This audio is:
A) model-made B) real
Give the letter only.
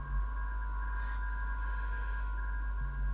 B